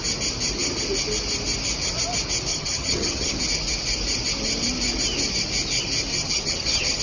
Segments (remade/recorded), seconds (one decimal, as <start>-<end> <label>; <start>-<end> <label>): 0.0-2.5 recorded; 2.5-3.4 remade; 3.4-6.1 recorded; 6.1-7.0 remade

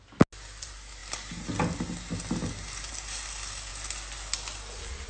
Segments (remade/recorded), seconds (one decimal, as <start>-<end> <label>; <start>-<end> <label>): 0.0-5.1 recorded

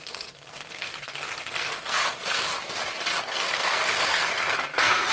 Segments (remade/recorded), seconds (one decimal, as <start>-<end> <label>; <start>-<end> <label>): 0.0-2.5 remade; 2.5-3.2 recorded; 3.2-5.1 remade

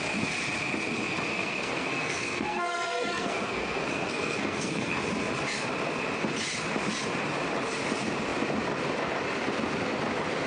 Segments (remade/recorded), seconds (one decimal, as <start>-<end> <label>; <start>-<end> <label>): 0.0-1.3 recorded; 1.3-5.0 remade; 5.0-10.5 recorded

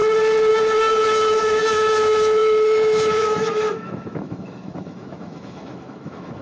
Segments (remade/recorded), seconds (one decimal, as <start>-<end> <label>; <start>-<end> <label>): 0.0-0.5 recorded; 0.5-6.4 remade

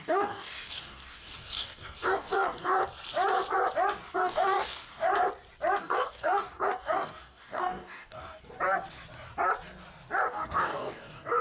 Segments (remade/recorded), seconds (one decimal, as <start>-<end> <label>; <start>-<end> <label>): 0.0-2.8 remade; 2.8-4.1 recorded; 4.1-5.1 remade; 5.1-5.8 recorded; 5.8-8.4 remade; 8.4-10.3 recorded; 10.3-11.4 remade